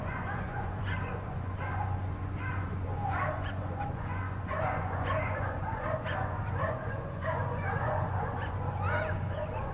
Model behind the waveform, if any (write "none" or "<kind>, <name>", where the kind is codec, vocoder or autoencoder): vocoder, Vocos